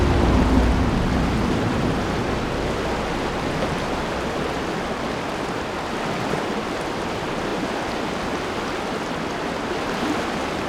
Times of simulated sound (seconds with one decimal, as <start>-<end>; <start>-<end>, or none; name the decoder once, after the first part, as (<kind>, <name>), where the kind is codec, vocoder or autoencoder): none